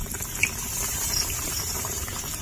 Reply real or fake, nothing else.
fake